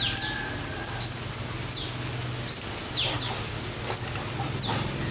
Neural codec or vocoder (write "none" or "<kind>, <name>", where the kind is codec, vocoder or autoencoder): none